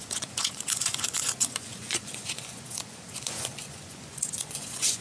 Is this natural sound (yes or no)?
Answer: no